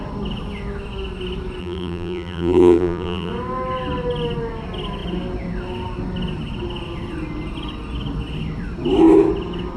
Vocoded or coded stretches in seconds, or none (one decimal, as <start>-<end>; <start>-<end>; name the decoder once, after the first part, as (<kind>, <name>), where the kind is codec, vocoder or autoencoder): 1.6-3.3 (vocoder, BigVGAN v2)